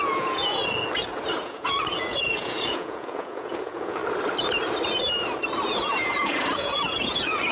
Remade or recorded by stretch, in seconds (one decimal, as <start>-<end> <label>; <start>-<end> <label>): 0.0-0.6 remade; 0.6-1.4 recorded; 1.4-4.0 remade; 4.0-5.7 recorded; 5.7-7.5 remade